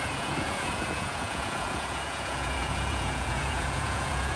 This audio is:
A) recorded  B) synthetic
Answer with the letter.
B